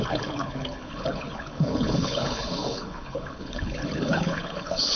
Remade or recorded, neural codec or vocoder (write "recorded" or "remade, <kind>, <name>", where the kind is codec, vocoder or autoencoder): remade, codec, HILCodec